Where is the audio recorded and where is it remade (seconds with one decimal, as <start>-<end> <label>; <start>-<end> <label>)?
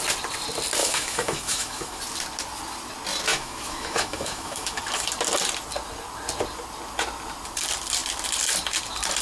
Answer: 0.0-0.8 recorded; 0.8-2.0 remade; 2.0-3.3 recorded; 3.3-4.8 remade; 4.8-9.2 recorded